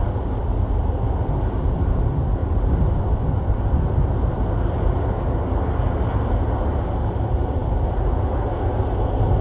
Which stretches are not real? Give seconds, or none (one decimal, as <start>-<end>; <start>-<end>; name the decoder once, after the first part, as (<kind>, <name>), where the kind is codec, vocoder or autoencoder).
none